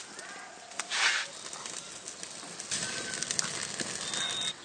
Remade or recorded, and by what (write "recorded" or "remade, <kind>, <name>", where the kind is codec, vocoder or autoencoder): recorded